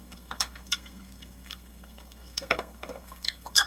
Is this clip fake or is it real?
fake